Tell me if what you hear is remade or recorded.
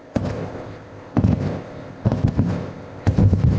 remade